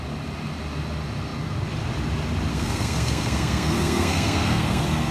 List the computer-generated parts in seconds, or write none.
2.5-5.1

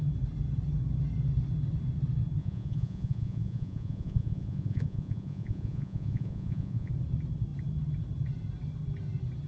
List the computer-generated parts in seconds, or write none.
2.4-6.9

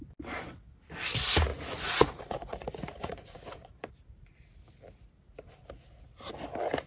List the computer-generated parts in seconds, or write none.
1.5-3.9